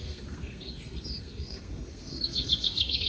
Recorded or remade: remade